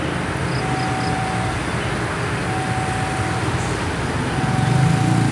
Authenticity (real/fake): real